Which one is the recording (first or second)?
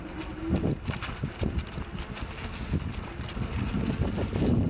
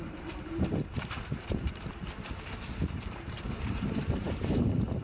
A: first